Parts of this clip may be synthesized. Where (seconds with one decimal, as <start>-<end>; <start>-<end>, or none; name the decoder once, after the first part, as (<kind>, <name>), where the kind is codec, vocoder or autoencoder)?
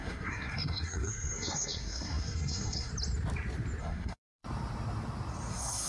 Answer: 0.0-2.9 (codec, SNAC); 3.8-4.4; 5.5-5.9